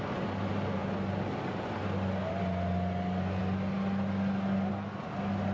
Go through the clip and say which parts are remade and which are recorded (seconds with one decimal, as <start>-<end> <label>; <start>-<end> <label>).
0.0-5.5 recorded

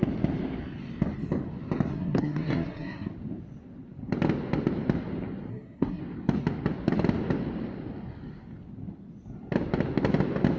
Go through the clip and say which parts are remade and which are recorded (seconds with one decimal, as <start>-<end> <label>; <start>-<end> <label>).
0.0-1.9 recorded; 1.9-3.1 remade; 3.1-5.5 recorded; 5.5-6.0 remade; 6.0-10.6 recorded

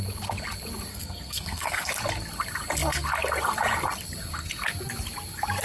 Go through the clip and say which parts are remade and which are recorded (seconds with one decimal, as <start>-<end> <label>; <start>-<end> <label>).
0.0-0.9 recorded; 0.9-1.9 remade; 1.9-5.6 recorded